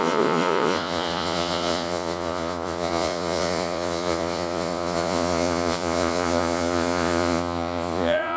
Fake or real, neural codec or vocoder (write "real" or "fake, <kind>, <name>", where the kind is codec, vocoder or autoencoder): fake, vocoder, Vocos